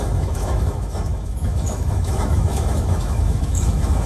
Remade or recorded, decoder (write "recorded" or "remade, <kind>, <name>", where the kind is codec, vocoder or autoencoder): remade, autoencoder, DAC-VAE